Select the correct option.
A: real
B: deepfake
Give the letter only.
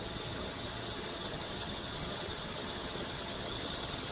B